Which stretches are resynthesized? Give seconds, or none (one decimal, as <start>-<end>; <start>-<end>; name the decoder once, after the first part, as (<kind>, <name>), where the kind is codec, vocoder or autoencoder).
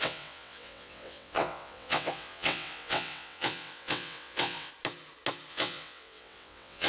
0.0-4.7 (vocoder, WaveNeXt); 5.5-6.9